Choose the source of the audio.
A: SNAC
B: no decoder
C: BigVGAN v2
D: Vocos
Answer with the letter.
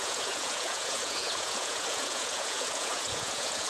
D